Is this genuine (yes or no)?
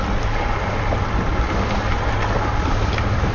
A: yes